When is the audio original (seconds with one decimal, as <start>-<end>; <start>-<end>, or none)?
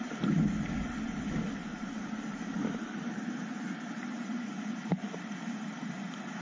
0.0-1.6; 5.4-6.4